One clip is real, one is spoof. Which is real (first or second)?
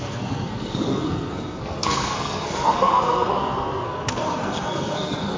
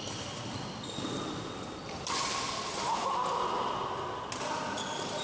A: second